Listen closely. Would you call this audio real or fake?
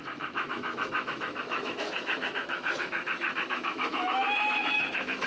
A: fake